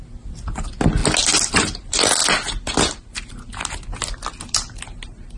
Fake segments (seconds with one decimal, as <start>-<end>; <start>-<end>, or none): none

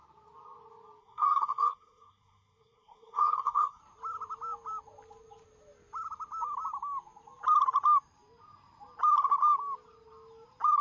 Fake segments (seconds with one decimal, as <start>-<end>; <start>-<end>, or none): 1.0-3.8

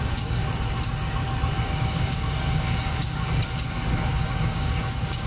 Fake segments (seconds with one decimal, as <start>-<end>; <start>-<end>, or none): 0.0-0.4; 1.7-3.0; 4.4-5.3